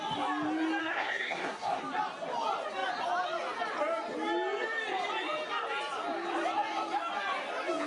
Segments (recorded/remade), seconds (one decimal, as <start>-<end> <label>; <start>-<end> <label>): 0.0-0.8 recorded; 0.8-1.8 remade; 1.8-7.9 recorded